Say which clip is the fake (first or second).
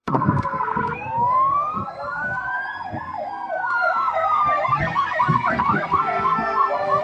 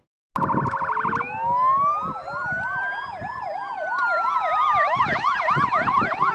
first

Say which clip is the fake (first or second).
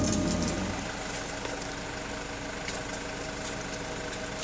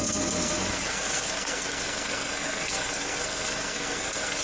second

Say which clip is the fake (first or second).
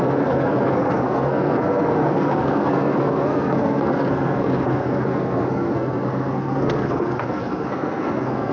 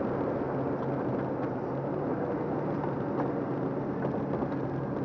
first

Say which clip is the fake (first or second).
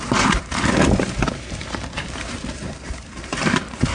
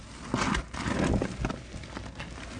first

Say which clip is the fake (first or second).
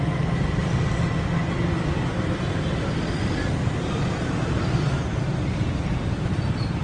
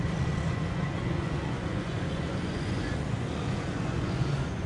second